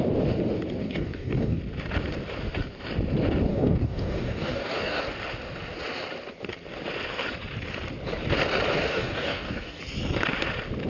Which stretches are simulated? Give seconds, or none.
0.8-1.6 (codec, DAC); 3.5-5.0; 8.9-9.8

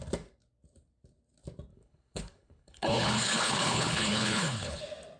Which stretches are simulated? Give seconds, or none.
1.7-4.8 (codec, HILCodec)

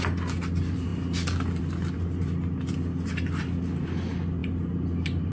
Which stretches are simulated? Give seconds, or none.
none